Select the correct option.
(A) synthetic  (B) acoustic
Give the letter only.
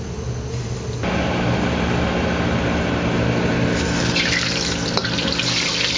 B